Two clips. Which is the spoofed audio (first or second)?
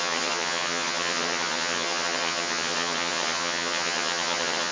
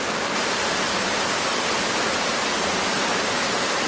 first